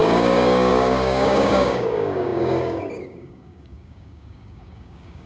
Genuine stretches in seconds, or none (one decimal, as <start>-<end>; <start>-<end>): none